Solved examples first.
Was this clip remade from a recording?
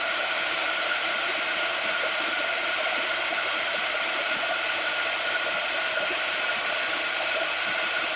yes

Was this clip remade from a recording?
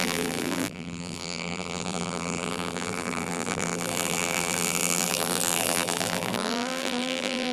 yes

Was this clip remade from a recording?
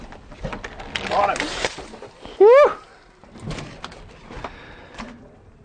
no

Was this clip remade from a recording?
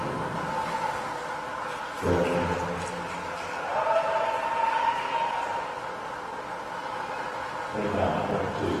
no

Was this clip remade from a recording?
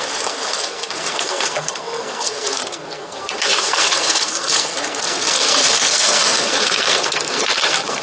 yes